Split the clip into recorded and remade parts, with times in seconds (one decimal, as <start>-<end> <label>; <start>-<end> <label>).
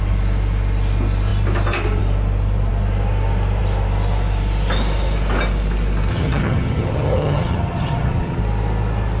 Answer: 0.0-6.1 recorded; 6.1-8.4 remade; 8.4-9.2 recorded